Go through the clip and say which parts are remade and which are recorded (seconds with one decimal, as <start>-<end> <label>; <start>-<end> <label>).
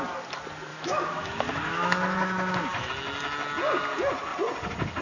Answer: 0.0-0.7 recorded; 0.7-2.9 remade; 2.9-5.0 recorded